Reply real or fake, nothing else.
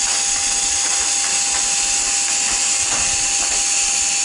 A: real